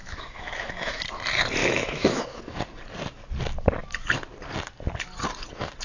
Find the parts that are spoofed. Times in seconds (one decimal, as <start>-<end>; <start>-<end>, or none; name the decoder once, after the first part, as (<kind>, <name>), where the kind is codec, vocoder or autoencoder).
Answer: 0.0-1.0 (autoencoder, DAC-VAE); 1.6-2.6